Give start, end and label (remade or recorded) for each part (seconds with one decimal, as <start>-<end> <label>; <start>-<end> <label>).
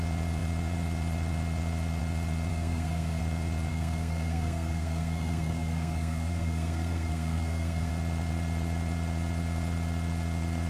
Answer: 0.0-2.5 recorded; 2.5-3.2 remade; 3.2-3.7 recorded; 3.7-7.9 remade; 7.9-10.7 recorded